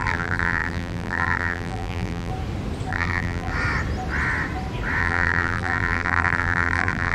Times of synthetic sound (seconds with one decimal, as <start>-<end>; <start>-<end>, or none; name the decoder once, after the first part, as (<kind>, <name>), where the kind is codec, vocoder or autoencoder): 0.0-2.3 (vocoder, BigVGAN v2); 2.9-3.5; 5.0-7.1